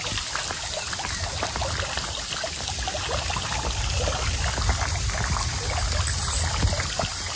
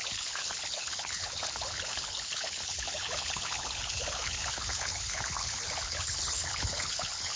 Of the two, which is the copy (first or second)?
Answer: second